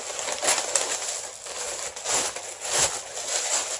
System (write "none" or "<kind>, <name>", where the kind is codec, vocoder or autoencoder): none